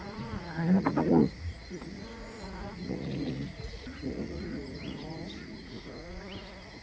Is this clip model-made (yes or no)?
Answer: yes